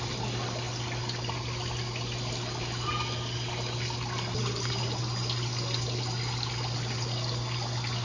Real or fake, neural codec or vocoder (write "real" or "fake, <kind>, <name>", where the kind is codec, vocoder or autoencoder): real